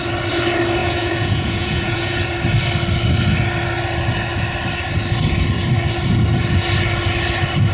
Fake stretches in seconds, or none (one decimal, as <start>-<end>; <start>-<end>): 0.8-2.2